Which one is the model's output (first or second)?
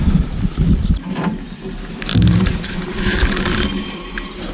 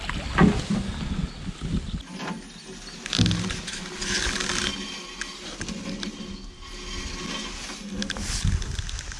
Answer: first